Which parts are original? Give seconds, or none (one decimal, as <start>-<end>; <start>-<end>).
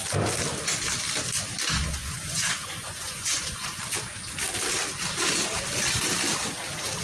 0.0-2.0; 3.8-7.0